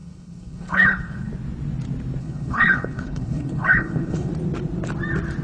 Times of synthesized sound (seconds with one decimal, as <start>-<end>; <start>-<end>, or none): 0.0-1.3; 2.2-4.3